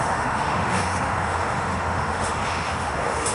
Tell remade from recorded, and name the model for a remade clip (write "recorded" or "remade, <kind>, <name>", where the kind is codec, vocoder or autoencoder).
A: remade, autoencoder, DAC-VAE